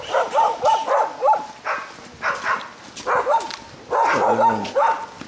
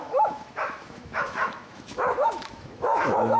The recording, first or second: first